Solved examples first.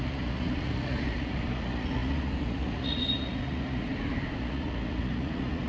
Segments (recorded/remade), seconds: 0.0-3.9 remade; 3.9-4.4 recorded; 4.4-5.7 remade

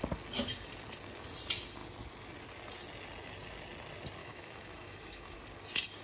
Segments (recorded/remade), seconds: 0.0-4.2 recorded; 4.2-5.4 remade; 5.4-6.0 recorded

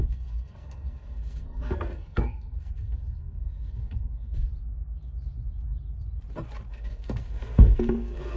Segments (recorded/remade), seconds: 0.0-4.5 remade; 4.5-6.7 recorded; 6.7-8.4 remade

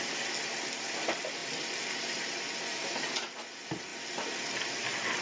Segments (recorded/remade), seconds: 0.0-5.2 recorded